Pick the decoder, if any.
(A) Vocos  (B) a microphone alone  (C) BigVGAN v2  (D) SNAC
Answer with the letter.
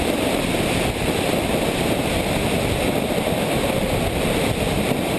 C